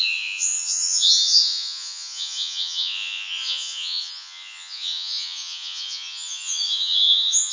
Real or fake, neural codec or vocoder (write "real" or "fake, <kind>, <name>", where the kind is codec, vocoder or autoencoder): fake, vocoder, Vocos